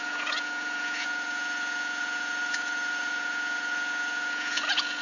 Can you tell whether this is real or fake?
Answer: fake